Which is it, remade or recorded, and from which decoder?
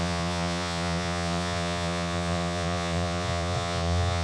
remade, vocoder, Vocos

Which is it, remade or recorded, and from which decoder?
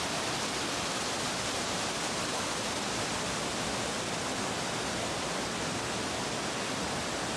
recorded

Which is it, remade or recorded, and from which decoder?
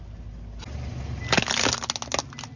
recorded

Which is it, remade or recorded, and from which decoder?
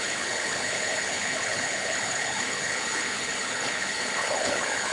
remade, codec, HILCodec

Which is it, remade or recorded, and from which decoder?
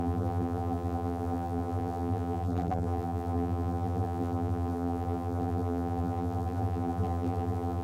remade, vocoder, BigVGAN v2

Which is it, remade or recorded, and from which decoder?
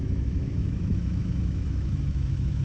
remade, autoencoder, DAC-VAE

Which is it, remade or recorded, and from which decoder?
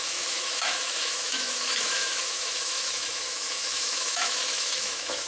remade, autoencoder, DAC-VAE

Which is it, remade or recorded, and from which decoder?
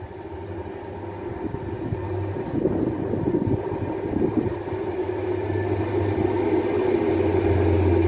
recorded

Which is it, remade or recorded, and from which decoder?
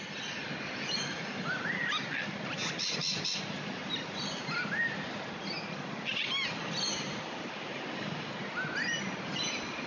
recorded